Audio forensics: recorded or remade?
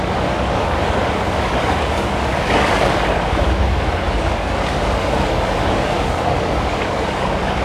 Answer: remade